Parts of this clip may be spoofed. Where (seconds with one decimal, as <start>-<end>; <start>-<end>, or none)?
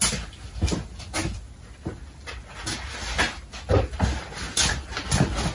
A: none